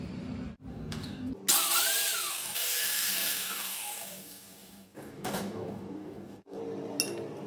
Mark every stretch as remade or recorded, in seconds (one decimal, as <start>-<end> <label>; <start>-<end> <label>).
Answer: 0.0-0.7 recorded; 0.7-1.3 remade; 1.3-2.3 recorded; 2.3-6.6 remade; 6.6-7.5 recorded